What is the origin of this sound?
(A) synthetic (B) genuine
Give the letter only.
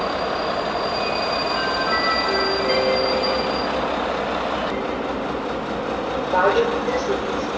B